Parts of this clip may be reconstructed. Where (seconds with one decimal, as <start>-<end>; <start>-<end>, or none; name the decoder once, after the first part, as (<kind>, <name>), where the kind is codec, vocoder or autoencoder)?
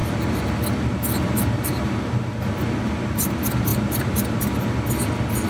3.7-4.4 (vocoder, BigVGAN v2)